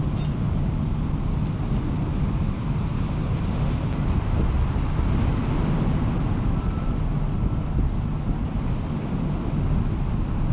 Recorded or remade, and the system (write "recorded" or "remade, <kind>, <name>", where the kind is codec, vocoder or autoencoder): recorded